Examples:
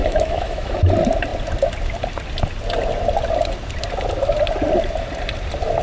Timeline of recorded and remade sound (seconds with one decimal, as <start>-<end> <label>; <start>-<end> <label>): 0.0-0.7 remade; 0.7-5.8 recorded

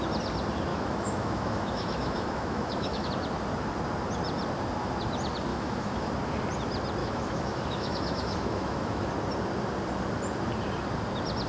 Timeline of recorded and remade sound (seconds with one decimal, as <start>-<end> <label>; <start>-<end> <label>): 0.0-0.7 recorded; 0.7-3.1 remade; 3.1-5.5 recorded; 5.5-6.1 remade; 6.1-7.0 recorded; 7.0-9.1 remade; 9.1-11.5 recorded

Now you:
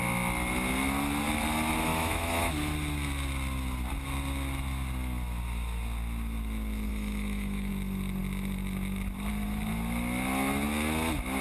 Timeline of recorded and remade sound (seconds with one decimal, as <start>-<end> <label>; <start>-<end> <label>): 0.0-1.9 recorded; 1.9-2.5 remade; 2.5-6.9 recorded; 6.9-7.7 remade; 7.7-11.4 recorded

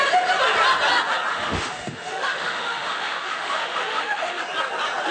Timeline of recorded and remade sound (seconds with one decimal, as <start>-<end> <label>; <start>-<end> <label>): 0.0-1.3 recorded; 1.3-4.4 remade; 4.4-5.1 recorded